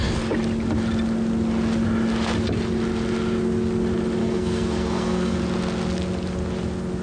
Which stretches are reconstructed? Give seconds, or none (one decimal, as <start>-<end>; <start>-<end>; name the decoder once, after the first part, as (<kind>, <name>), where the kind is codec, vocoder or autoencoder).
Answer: 4.2-5.4 (codec, SNAC)